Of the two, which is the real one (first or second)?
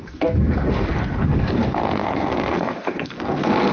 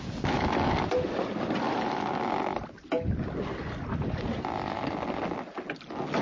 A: second